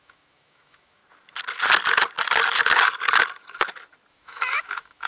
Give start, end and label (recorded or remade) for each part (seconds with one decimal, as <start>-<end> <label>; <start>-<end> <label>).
0.0-1.0 remade; 1.0-4.1 recorded; 4.1-5.1 remade